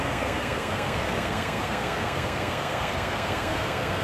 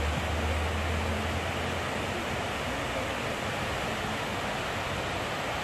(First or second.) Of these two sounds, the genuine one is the second